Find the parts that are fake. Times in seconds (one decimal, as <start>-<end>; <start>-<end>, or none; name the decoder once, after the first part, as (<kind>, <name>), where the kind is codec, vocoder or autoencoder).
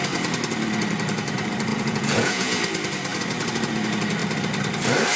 1.7-2.6 (vocoder, Vocos)